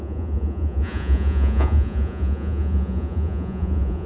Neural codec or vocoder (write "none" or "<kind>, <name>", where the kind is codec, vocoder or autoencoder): vocoder, Vocos